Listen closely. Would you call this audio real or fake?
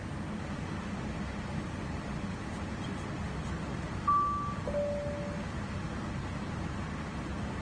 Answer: real